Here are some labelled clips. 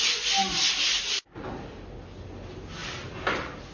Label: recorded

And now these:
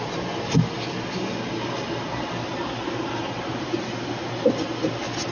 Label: recorded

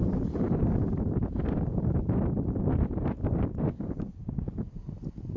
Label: recorded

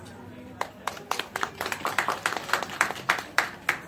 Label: remade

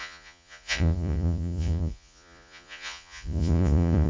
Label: remade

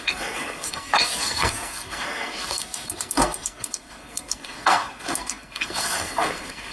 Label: remade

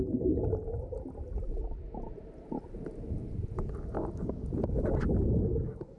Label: recorded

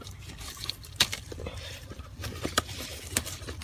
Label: remade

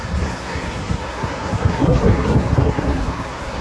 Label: remade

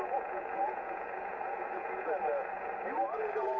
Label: remade